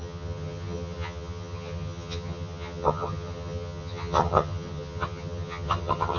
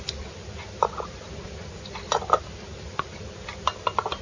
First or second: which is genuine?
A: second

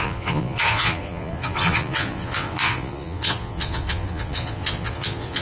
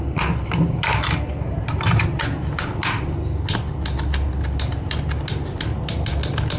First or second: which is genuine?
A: second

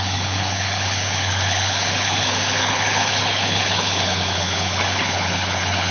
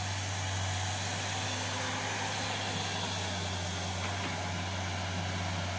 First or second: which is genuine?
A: second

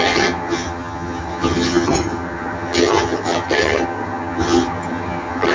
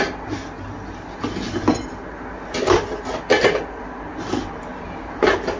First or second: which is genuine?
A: second